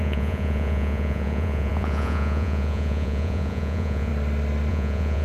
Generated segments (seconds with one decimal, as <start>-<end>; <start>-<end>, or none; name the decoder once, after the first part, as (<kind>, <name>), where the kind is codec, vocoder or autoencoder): 0.0-4.1 (vocoder, Vocos); 4.7-5.2